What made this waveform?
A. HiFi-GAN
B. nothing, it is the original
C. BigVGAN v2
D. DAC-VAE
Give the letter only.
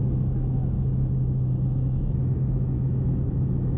D